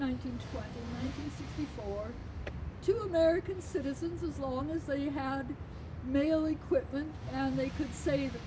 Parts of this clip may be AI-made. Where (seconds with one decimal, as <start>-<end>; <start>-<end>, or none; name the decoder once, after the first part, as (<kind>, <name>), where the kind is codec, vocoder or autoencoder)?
0.5-1.5 (vocoder, Vocos)